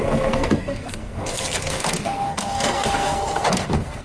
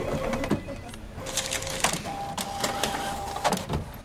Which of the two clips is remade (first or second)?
first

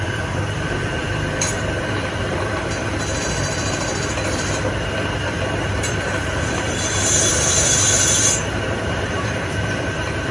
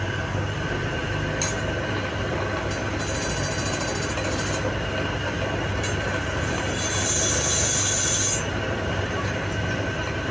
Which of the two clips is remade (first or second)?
first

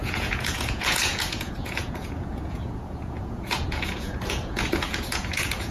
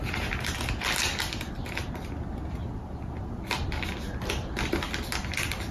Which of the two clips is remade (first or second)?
first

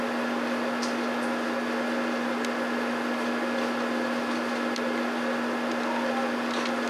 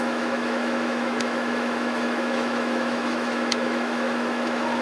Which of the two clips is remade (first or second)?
second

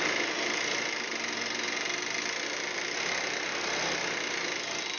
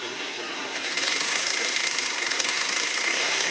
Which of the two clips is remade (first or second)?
second